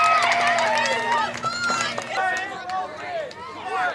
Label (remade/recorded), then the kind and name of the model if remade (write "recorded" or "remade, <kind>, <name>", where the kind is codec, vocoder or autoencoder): recorded